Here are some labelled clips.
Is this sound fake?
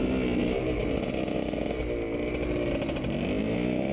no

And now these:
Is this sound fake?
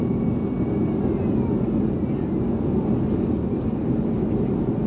no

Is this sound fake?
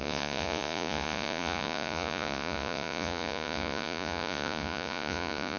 yes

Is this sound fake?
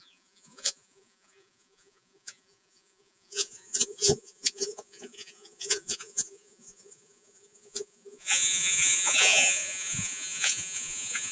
yes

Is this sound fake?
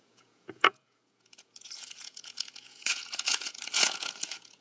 yes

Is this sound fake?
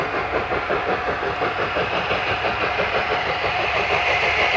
no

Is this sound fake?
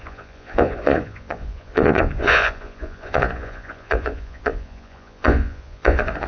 yes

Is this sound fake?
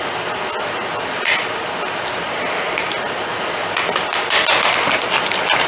no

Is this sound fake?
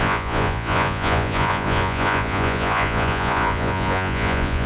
yes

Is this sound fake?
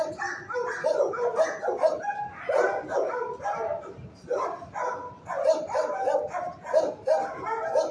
no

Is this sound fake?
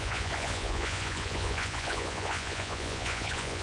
yes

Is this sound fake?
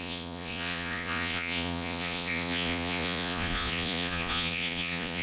yes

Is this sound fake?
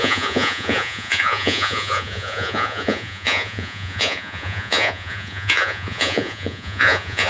yes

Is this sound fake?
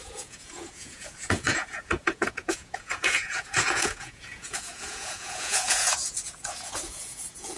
yes